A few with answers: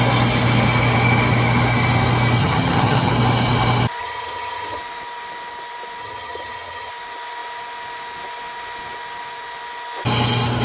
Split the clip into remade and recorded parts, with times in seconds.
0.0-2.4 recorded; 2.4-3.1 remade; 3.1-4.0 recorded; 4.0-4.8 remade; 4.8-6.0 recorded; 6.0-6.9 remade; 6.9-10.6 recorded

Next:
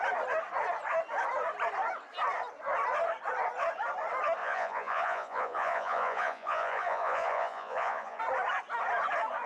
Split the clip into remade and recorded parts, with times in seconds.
0.0-4.4 recorded; 4.4-8.2 remade; 8.2-9.5 recorded